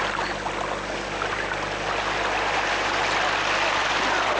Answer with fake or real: real